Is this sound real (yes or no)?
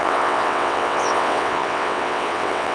no